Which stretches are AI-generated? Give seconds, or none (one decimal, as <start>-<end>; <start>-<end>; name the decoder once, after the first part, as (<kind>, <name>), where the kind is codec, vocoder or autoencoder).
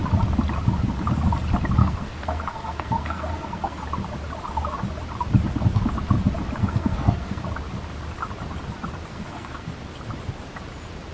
1.8-3.8 (codec, SNAC); 6.6-7.4; 9.1-9.7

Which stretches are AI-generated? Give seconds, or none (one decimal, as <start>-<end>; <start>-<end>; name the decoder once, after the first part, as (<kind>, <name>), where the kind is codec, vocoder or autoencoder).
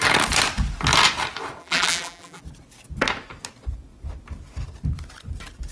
1.6-2.4 (vocoder, BigVGAN v2)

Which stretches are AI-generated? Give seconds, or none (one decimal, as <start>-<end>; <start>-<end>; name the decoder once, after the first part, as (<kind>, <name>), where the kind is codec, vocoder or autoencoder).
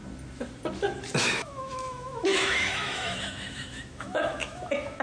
1.2-5.0 (autoencoder, DAC-VAE)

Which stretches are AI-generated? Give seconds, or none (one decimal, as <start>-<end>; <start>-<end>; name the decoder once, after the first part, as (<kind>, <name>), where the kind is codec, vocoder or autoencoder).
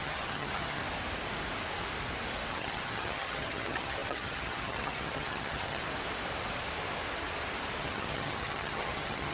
0.0-0.8 (vocoder, HiFi-GAN); 2.5-5.8; 7.8-9.3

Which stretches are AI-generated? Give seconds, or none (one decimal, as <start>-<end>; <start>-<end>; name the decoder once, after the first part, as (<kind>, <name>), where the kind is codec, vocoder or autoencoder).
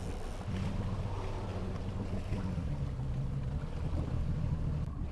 none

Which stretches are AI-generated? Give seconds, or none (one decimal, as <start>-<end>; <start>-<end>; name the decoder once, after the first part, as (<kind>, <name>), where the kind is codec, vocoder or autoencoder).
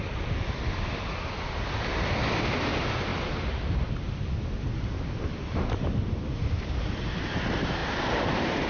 3.1-3.9 (vocoder, BigVGAN v2); 4.7-6.8; 7.8-8.7